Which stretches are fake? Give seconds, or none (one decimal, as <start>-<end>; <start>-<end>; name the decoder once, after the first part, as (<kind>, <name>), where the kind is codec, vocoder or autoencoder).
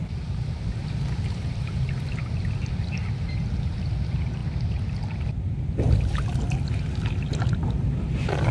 0.8-2.2 (vocoder, BigVGAN v2)